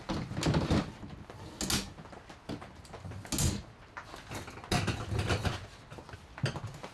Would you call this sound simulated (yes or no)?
no